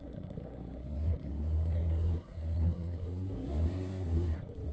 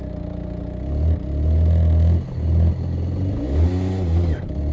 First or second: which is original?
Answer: second